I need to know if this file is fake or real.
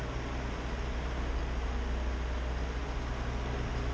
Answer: real